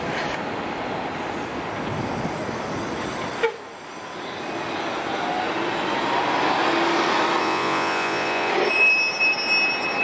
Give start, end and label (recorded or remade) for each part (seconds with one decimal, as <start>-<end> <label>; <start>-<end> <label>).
0.0-7.4 recorded; 7.4-8.5 remade; 8.5-10.0 recorded